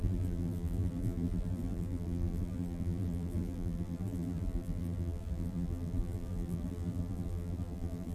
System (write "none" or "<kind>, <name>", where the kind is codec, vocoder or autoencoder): vocoder, BigVGAN v2